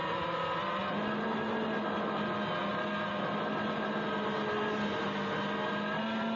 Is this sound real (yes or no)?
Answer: yes